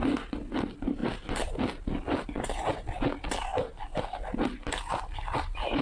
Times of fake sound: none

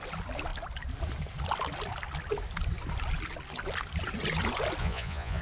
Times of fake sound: 4.8-5.4 (vocoder, Vocos)

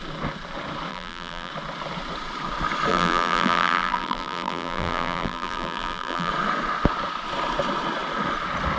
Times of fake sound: 0.9-1.5 (vocoder, BigVGAN v2); 2.9-6.3

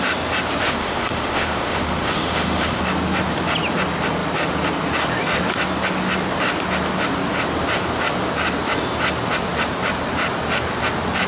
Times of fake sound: 0.6-2.8 (autoencoder, DAC-VAE)

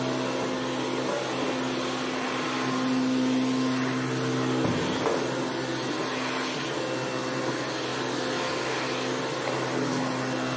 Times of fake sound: none